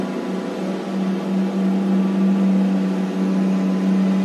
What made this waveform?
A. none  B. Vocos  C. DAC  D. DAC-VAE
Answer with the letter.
A